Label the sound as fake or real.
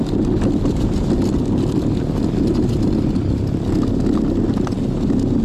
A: real